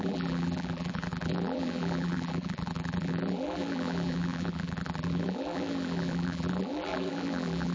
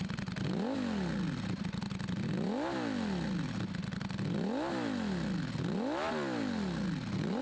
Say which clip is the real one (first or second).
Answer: second